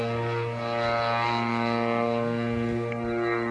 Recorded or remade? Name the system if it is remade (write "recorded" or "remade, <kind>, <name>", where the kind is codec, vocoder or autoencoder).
recorded